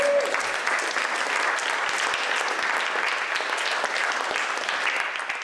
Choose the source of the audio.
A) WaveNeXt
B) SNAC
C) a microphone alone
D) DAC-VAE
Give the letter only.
C